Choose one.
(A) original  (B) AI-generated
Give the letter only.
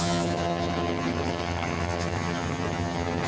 B